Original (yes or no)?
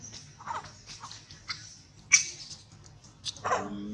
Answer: yes